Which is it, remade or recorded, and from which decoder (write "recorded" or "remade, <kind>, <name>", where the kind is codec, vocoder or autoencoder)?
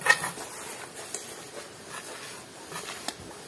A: recorded